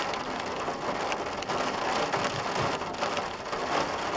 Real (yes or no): yes